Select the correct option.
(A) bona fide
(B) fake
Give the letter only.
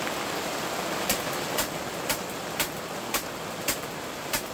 A